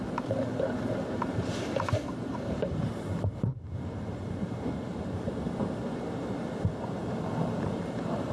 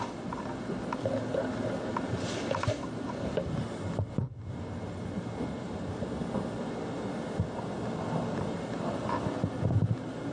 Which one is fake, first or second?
first